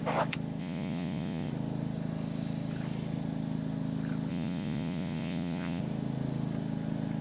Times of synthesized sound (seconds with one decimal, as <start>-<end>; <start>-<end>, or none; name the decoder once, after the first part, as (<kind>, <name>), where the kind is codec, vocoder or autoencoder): 0.6-1.5 (vocoder, Vocos); 4.3-5.8